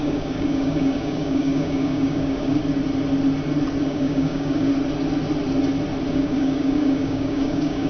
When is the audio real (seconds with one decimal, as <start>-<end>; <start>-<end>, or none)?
2.6-3.8; 4.7-6.1